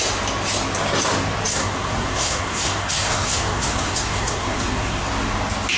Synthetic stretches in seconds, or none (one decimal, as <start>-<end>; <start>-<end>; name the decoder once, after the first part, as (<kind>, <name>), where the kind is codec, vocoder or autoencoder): 1.5-5.0 (codec, SNAC)